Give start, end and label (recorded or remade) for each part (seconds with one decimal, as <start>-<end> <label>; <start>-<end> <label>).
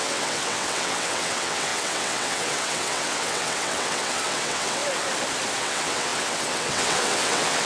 0.0-4.8 remade; 4.8-5.6 recorded; 5.6-7.7 remade